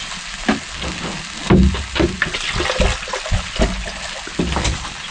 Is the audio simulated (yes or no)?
no